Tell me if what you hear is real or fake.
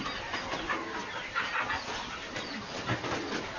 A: real